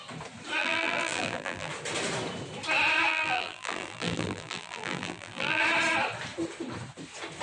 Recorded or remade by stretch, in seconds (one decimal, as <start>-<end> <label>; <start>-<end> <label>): 0.0-0.6 recorded; 0.6-1.7 remade; 1.7-3.1 recorded; 3.1-5.6 remade; 5.6-7.4 recorded